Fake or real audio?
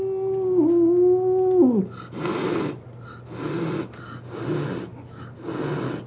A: real